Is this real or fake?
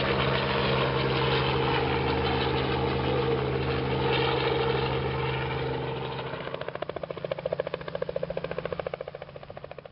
real